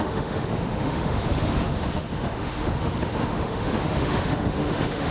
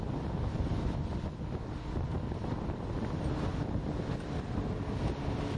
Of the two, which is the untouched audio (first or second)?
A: second